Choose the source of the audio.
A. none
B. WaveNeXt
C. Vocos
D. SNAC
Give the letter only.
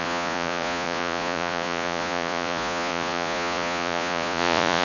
C